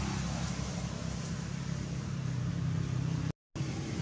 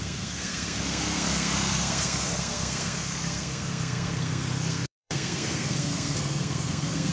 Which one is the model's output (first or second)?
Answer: second